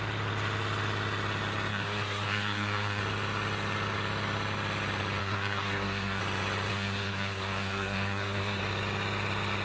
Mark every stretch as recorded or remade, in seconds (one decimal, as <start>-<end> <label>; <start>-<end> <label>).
0.0-1.7 recorded; 1.7-3.0 remade; 3.0-5.2 recorded; 5.2-6.2 remade; 6.2-6.7 recorded; 6.7-8.6 remade; 8.6-9.6 recorded